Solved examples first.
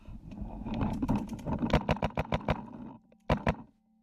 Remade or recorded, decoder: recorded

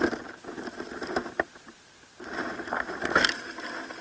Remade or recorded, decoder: recorded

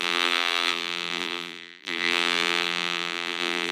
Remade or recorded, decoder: remade, vocoder, BigVGAN v2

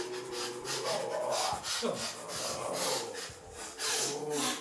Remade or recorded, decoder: recorded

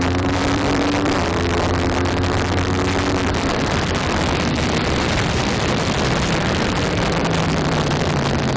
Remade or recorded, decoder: remade, vocoder, BigVGAN v2